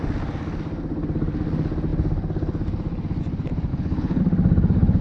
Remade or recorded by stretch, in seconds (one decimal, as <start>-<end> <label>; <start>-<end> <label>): 0.0-3.7 recorded; 3.7-4.2 remade; 4.2-5.0 recorded